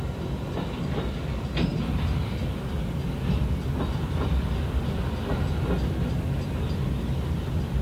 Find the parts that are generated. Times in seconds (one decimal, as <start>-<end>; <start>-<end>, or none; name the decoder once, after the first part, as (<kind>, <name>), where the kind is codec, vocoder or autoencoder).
none